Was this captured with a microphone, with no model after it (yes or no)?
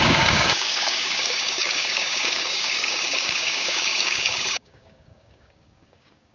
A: no